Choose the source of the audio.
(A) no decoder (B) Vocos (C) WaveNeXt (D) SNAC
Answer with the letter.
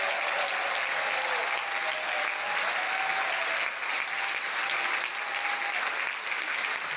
A